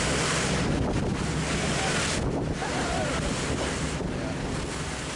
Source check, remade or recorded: recorded